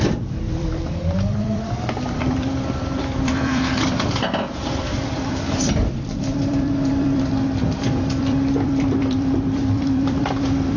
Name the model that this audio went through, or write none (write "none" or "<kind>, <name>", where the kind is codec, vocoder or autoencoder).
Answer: vocoder, BigVGAN v2